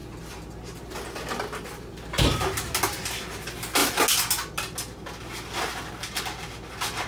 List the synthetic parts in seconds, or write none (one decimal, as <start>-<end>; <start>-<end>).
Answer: none